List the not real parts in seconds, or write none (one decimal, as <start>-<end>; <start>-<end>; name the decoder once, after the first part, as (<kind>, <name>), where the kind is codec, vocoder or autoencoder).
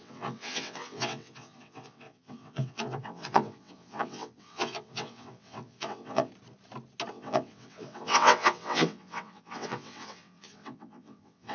0.0-6.3 (vocoder, WaveNeXt); 7.1-11.5